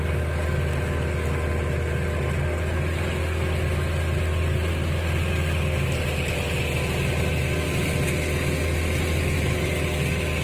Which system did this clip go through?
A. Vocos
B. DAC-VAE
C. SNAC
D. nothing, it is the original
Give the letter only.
D